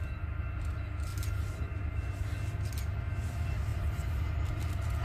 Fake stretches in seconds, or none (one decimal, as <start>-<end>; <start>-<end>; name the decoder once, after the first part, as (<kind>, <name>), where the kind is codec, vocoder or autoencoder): none